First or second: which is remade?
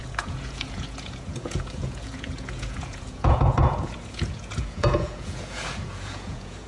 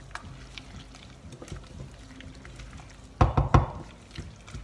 first